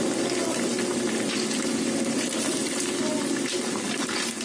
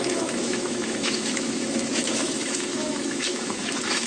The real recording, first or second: first